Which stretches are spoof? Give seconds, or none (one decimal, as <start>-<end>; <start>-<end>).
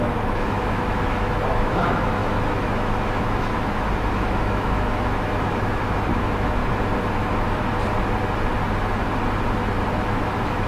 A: 0.0-6.6; 10.0-10.7